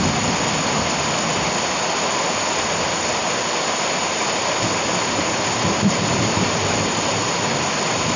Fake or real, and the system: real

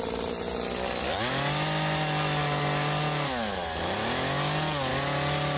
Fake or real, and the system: real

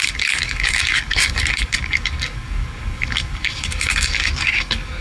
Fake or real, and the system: fake, codec, DAC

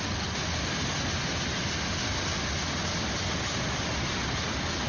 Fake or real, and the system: real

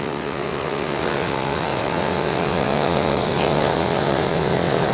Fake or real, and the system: fake, vocoder, WaveNeXt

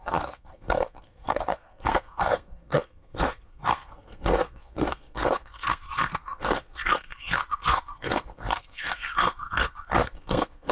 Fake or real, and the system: fake, codec, SNAC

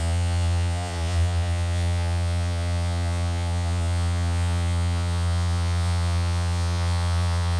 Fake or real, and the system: fake, vocoder, Vocos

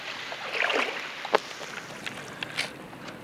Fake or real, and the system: fake, vocoder, BigVGAN v2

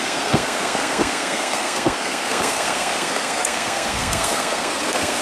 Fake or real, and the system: fake, codec, SNAC